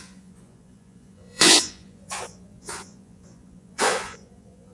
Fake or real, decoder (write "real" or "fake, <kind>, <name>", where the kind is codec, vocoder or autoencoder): fake, vocoder, Vocos